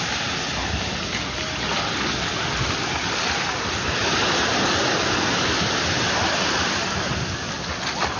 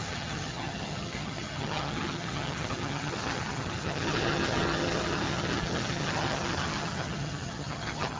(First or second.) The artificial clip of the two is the second